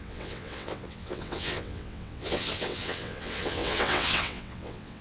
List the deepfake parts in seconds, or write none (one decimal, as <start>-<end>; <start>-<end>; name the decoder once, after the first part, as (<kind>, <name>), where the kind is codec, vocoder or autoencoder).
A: 0.0-5.0 (vocoder, WaveNeXt)